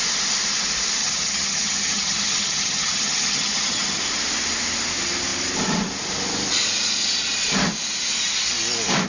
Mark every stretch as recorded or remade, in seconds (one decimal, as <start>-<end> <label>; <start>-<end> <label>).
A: 0.0-1.0 recorded; 1.0-4.0 remade; 4.0-9.1 recorded